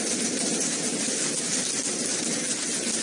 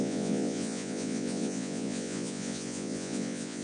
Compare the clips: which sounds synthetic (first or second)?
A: second